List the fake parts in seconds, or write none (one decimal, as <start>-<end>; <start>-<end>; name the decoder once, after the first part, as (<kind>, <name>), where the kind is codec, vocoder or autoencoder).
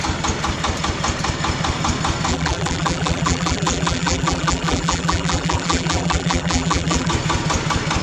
2.3-7.1 (vocoder, BigVGAN v2)